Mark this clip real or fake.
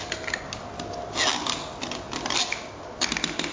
real